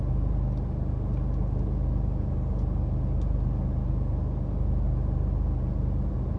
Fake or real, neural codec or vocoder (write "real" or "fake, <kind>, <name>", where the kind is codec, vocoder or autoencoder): real